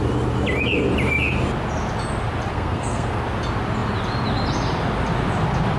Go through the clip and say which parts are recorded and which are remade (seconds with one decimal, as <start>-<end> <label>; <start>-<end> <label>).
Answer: 0.0-2.5 recorded; 2.5-3.2 remade; 3.2-5.8 recorded